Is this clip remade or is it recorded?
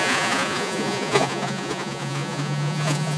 remade